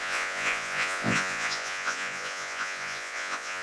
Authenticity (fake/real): fake